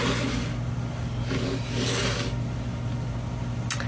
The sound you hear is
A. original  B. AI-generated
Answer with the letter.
A